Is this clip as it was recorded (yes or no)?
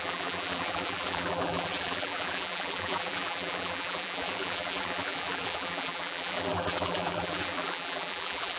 no